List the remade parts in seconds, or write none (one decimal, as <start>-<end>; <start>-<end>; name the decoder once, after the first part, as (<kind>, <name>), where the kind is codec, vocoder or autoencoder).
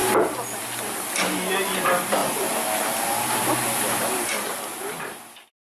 2.2-5.6 (vocoder, BigVGAN v2)